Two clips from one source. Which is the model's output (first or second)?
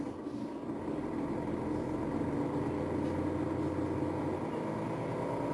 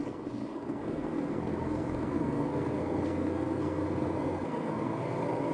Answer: second